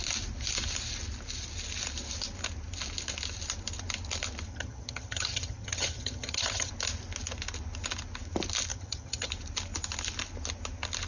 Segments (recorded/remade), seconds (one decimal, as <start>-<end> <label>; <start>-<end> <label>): 0.0-4.5 recorded; 4.5-6.7 remade; 6.7-8.7 recorded; 8.7-9.3 remade; 9.3-11.1 recorded

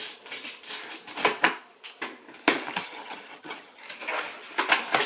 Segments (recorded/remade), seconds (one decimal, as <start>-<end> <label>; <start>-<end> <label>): 0.0-2.8 recorded; 2.8-3.8 remade; 3.8-5.1 recorded

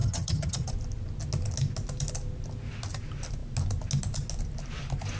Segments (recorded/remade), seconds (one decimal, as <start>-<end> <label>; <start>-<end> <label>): 0.0-0.7 remade; 0.7-5.2 recorded

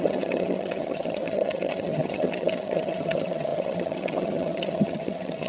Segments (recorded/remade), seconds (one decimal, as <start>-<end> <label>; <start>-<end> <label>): 0.0-5.5 remade

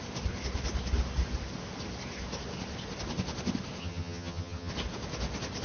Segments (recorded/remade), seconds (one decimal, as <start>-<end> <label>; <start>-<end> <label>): 0.0-3.8 recorded; 3.8-4.7 remade; 4.7-5.6 recorded

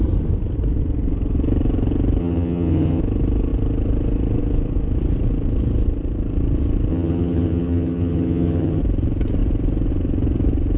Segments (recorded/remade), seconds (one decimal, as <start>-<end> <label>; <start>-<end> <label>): 0.0-2.2 recorded; 2.2-3.0 remade; 3.0-6.9 recorded; 6.9-8.8 remade; 8.8-10.8 recorded

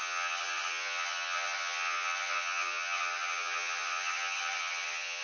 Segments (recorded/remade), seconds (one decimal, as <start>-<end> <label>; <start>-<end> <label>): 0.0-5.2 remade

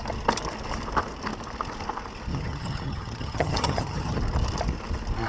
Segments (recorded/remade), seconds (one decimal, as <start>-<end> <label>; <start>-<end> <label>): 0.0-2.3 recorded; 2.3-4.2 remade; 4.2-5.3 recorded